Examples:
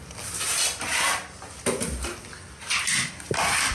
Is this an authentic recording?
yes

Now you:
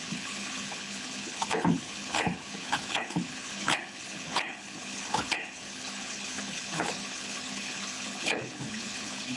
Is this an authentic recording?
no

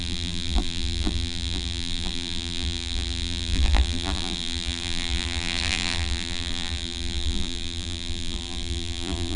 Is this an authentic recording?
no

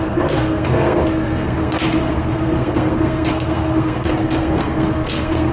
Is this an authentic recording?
no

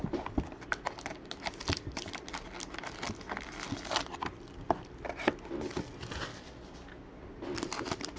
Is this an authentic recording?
yes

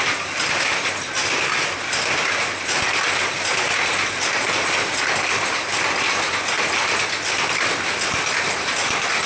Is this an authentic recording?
yes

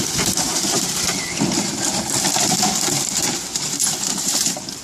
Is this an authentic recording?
no